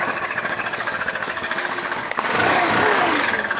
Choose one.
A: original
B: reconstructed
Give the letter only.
B